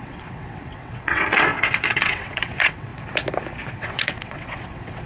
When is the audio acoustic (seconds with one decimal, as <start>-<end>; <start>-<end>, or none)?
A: 2.9-3.7